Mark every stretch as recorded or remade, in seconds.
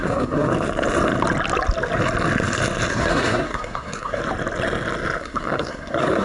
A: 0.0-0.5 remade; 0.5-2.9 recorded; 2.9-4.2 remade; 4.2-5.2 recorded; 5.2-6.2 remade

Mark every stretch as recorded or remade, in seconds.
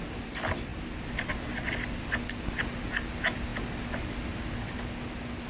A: 0.0-5.5 recorded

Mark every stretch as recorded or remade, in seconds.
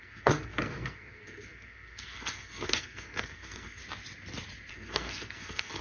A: 0.0-3.8 remade; 3.8-4.7 recorded; 4.7-5.8 remade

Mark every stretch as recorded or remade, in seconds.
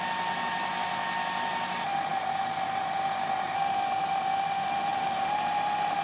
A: 0.0-4.9 recorded; 4.9-6.0 remade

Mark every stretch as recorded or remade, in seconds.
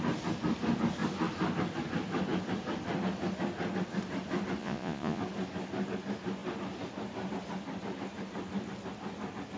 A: 0.0-4.6 recorded; 4.6-5.2 remade; 5.2-9.6 recorded